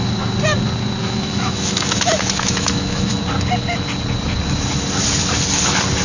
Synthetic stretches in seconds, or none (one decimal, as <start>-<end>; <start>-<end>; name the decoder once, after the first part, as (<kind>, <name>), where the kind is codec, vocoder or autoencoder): 1.0-3.2 (autoencoder, DAC-VAE)